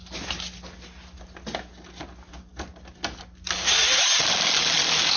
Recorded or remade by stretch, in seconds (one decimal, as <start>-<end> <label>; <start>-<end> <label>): 0.0-5.2 recorded